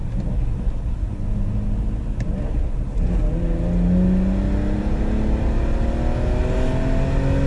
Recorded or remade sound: recorded